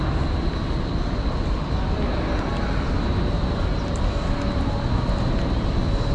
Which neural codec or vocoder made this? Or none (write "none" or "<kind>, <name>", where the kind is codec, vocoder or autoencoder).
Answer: none